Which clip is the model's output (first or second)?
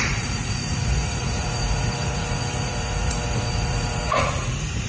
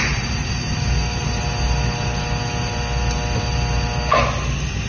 first